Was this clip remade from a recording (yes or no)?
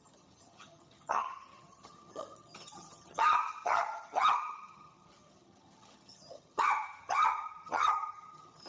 yes